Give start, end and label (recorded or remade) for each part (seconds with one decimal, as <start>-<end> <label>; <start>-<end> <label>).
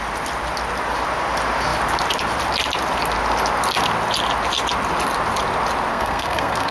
0.0-5.9 recorded; 5.9-6.7 remade